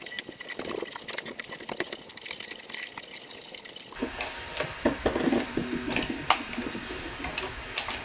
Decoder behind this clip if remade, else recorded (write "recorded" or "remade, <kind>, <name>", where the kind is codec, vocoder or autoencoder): recorded